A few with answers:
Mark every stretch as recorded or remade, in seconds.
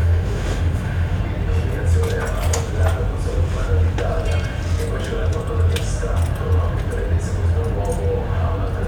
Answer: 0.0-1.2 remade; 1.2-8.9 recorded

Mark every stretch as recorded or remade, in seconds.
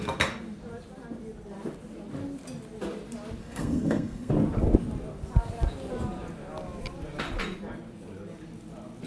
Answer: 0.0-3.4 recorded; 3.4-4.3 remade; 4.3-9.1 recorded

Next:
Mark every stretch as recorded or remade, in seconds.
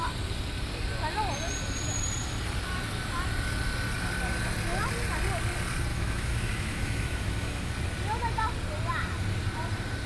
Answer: 0.0-5.9 recorded; 5.9-7.7 remade; 7.7-10.1 recorded